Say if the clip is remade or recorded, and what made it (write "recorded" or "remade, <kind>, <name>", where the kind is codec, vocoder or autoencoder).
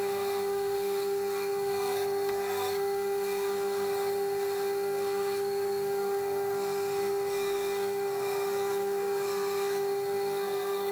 remade, codec, SNAC